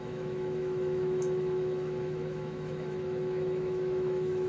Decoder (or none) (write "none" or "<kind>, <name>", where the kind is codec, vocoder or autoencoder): autoencoder, DAC-VAE